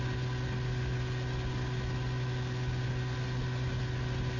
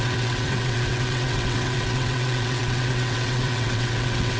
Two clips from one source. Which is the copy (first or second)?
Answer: second